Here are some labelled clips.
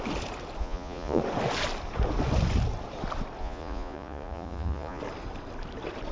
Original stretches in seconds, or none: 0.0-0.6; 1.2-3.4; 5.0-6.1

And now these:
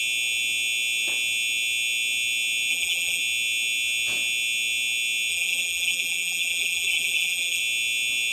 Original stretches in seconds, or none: 0.0-2.7; 3.2-5.3; 7.6-8.3

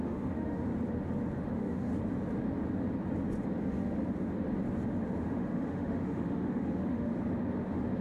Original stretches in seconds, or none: 0.7-1.5; 1.9-3.6; 4.0-5.2; 7.1-8.0

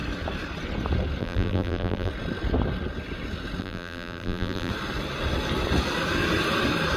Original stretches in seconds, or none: 0.0-1.2; 2.1-3.6; 4.7-7.0